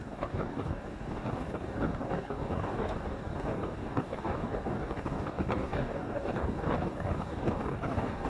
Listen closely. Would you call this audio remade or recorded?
remade